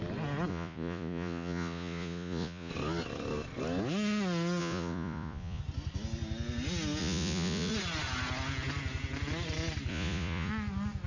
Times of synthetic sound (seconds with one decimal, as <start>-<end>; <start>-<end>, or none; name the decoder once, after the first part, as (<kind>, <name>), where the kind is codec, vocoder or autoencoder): 0.5-2.7 (vocoder, Vocos); 4.6-5.6; 7.0-7.7; 9.9-10.5